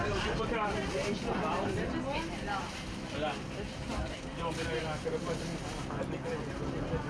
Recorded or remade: recorded